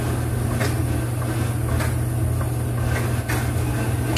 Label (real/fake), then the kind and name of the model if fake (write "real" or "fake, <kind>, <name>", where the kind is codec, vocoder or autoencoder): real